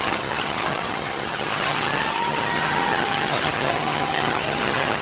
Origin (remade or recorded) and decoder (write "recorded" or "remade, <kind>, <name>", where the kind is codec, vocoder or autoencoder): remade, vocoder, HiFi-GAN